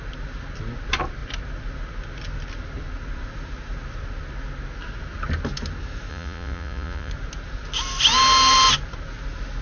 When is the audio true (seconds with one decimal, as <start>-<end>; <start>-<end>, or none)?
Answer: 0.0-6.1; 7.1-9.6